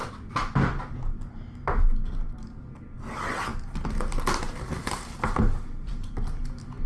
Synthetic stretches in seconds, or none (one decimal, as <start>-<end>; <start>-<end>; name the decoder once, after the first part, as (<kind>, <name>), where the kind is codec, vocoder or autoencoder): none